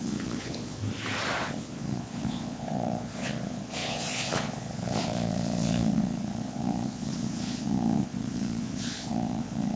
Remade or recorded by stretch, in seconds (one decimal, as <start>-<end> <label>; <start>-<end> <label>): 0.0-0.8 remade; 0.8-1.4 recorded; 1.4-9.8 remade